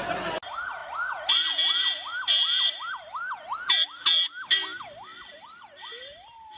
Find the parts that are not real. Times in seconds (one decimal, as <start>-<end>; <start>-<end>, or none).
5.1-6.6